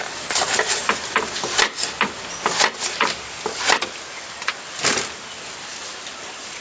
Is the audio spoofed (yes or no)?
no